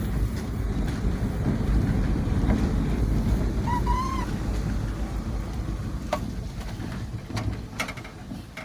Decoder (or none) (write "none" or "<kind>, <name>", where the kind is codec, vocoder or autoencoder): none